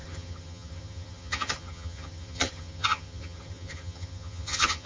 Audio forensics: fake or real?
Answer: fake